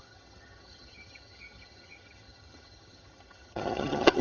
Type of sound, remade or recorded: remade